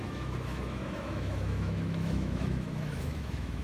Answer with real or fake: fake